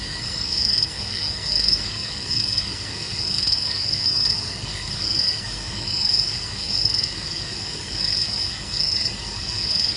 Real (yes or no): no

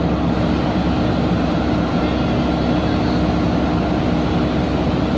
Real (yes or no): yes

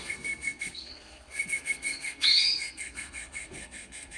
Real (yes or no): no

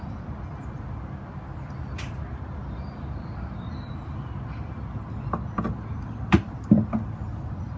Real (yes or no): yes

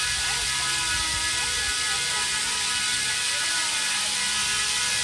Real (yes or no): yes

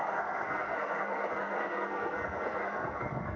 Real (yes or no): no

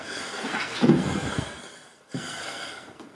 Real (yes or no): no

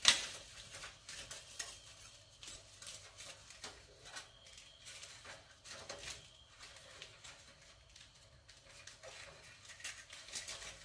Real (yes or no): yes